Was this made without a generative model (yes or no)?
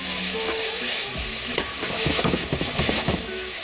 no